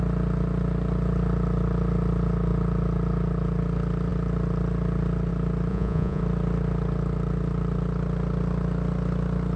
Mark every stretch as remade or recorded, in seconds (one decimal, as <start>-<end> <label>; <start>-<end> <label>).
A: 0.0-5.7 recorded; 5.7-6.2 remade; 6.2-9.6 recorded